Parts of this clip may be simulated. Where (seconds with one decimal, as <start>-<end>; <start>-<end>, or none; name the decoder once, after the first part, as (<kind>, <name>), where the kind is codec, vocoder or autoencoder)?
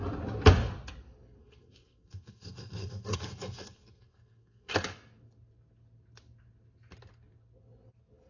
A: 1.4-4.7 (codec, SNAC)